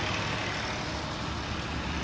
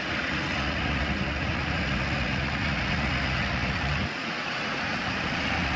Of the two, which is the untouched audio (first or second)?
first